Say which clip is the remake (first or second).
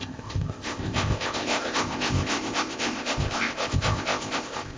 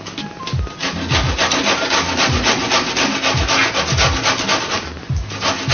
first